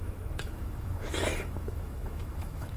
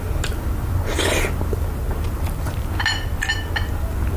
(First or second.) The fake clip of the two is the first